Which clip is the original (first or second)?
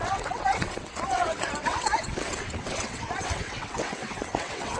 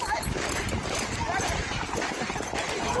second